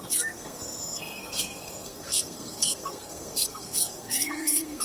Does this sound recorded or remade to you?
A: remade